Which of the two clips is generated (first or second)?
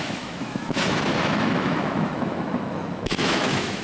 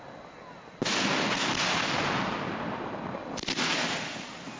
first